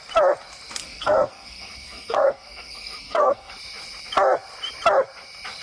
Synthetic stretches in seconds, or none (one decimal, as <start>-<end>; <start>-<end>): 0.8-3.5